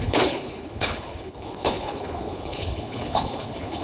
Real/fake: fake